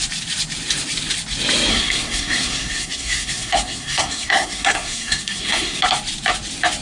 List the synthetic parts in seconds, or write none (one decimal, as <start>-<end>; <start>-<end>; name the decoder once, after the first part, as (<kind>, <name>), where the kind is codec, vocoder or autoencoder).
1.7-5.8 (codec, SNAC)